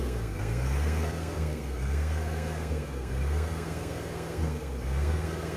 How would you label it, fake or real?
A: fake